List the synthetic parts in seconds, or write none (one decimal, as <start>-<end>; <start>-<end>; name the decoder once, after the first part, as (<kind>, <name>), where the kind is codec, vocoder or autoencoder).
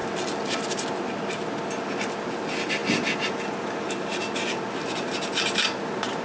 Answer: none